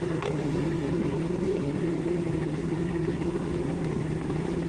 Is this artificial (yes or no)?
yes